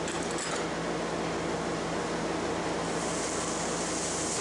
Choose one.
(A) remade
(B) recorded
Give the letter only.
B